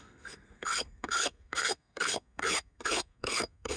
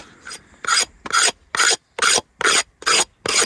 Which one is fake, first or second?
first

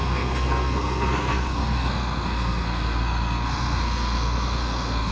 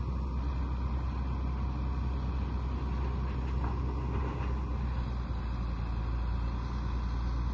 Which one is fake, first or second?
first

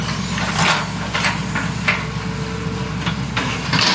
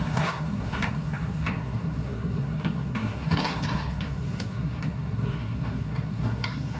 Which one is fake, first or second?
second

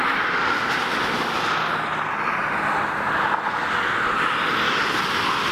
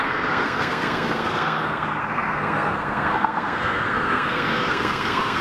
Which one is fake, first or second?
second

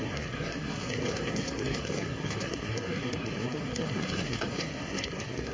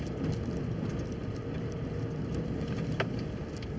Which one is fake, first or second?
first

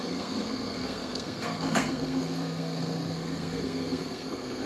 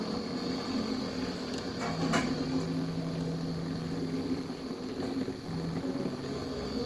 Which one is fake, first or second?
first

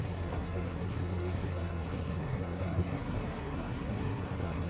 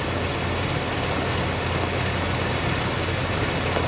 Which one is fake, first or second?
first